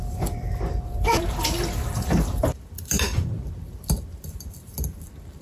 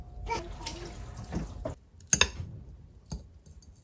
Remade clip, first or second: first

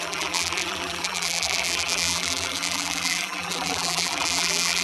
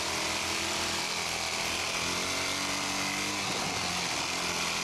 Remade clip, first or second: first